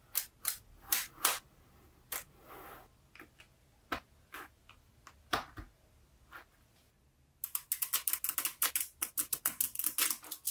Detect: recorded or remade recorded